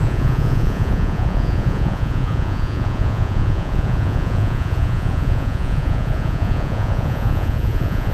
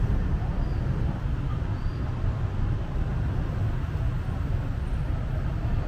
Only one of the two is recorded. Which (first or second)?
second